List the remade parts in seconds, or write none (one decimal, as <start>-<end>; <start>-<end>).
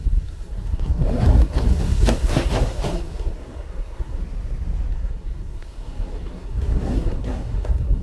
0.0-4.2; 4.9-8.0